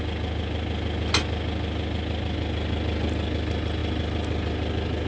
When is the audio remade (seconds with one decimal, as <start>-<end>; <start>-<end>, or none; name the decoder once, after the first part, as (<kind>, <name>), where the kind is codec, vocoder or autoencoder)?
none